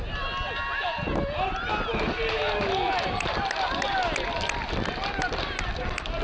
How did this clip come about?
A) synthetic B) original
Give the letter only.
B